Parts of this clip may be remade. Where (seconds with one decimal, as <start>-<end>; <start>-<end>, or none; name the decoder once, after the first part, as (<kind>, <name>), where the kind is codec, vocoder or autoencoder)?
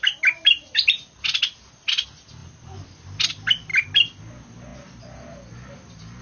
none